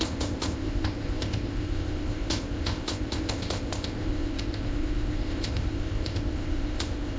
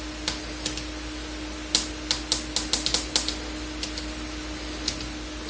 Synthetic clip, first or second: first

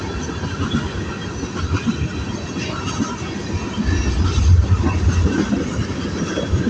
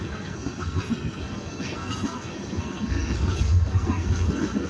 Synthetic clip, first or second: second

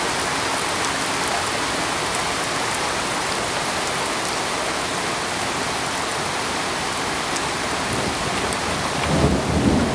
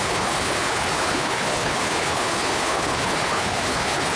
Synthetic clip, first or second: second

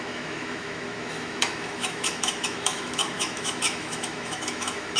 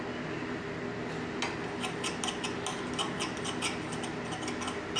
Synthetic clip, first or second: first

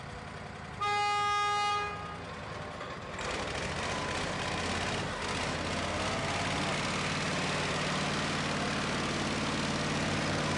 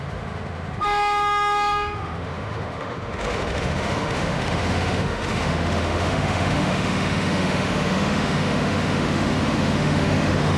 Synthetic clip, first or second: second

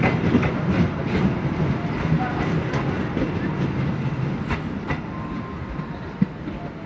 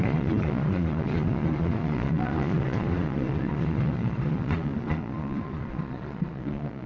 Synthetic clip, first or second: second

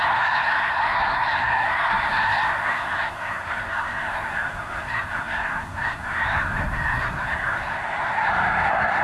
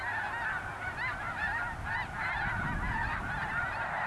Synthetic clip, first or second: first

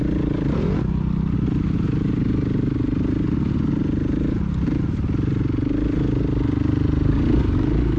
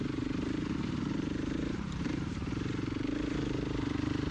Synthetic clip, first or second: second